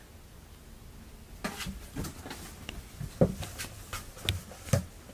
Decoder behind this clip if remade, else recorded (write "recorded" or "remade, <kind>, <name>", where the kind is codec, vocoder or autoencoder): recorded